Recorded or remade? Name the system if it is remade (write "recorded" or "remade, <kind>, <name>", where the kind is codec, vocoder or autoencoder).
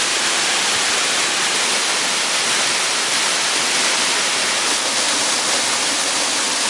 recorded